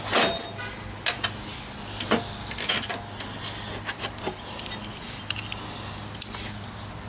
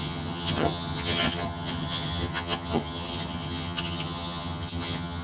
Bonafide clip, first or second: first